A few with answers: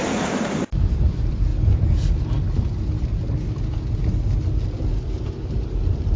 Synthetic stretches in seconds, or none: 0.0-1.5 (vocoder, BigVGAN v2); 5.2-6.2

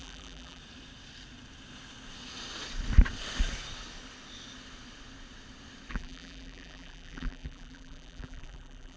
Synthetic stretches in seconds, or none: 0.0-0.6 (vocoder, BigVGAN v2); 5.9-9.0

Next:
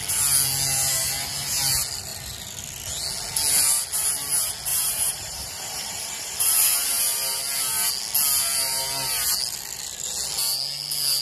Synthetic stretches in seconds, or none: 4.7-7.0 (vocoder, BigVGAN v2)